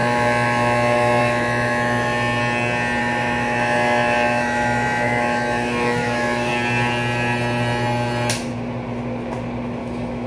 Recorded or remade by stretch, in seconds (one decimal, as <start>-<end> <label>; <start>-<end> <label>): 0.0-2.4 remade; 2.4-3.0 recorded; 3.0-6.5 remade; 6.5-9.8 recorded; 9.8-10.3 remade